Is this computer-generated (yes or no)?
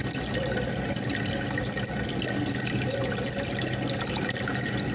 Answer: no